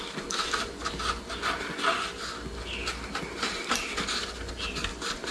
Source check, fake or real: real